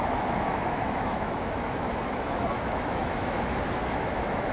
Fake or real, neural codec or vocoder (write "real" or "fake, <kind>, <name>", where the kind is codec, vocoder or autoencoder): fake, autoencoder, DAC-VAE